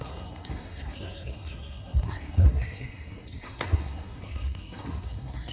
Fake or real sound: fake